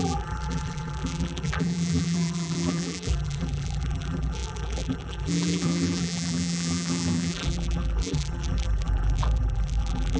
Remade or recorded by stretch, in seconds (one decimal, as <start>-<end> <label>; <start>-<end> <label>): 0.0-10.2 remade

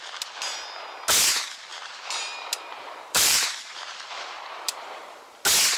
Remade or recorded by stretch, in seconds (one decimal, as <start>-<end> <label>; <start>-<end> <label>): 0.0-1.7 recorded; 1.7-5.2 remade; 5.2-5.8 recorded